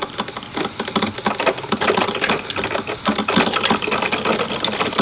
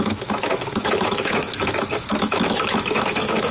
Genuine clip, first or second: first